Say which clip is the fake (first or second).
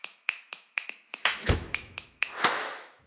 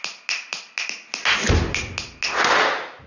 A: first